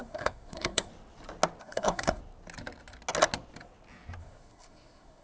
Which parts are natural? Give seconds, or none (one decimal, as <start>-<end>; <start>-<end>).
0.9-1.6; 2.2-4.2